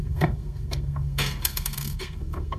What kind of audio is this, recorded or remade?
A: remade